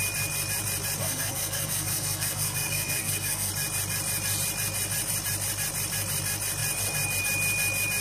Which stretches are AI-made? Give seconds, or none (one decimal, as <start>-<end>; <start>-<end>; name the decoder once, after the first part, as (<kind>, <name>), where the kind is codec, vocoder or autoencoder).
1.0-3.5 (codec, SNAC)